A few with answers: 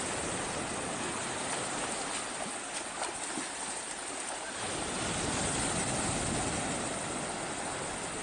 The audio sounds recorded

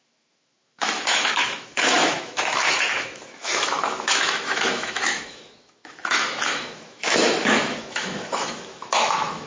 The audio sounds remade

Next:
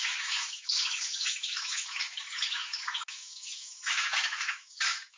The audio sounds remade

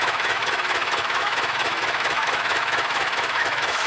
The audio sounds remade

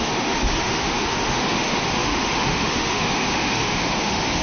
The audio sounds remade